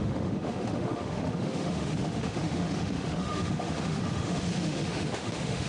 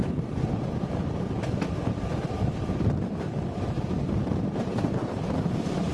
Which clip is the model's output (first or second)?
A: first